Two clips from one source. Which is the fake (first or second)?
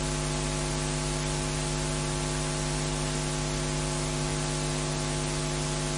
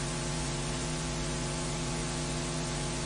second